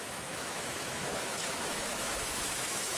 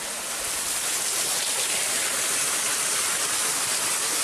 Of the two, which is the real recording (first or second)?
second